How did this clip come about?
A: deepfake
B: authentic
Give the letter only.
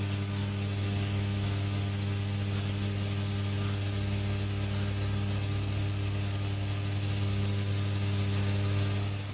B